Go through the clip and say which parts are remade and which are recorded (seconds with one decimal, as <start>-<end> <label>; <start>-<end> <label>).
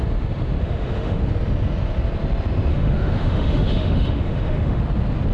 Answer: 0.0-0.6 recorded; 0.6-1.2 remade; 1.2-2.7 recorded; 2.7-4.8 remade; 4.8-5.3 recorded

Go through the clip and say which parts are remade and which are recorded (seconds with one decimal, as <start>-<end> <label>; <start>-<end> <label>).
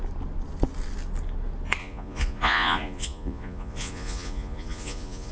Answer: 0.0-1.8 recorded; 1.8-5.3 remade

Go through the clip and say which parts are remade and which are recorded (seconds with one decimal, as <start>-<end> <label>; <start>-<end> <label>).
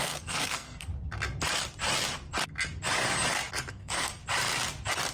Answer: 0.0-0.9 remade; 0.9-3.7 recorded; 3.7-4.2 remade; 4.2-5.1 recorded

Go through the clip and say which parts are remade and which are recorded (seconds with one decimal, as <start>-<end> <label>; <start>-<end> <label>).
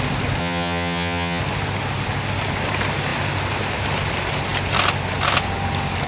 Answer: 0.0-0.4 recorded; 0.4-1.4 remade; 1.4-6.1 recorded